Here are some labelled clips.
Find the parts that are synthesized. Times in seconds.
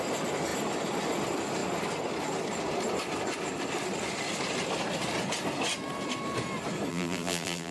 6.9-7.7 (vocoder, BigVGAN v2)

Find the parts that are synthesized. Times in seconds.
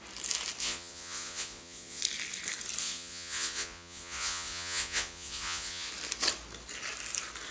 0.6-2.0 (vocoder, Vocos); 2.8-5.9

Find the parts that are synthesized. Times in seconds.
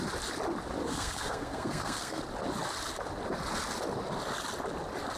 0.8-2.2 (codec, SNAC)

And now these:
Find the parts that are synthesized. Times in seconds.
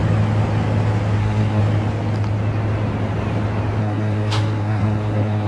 1.2-1.6 (codec, SNAC); 3.8-5.5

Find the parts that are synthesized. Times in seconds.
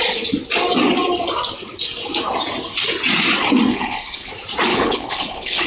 3.7-4.3 (codec, HILCodec); 4.7-5.7